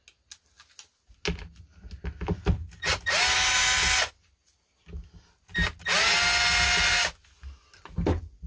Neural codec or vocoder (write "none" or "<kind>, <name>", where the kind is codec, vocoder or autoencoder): none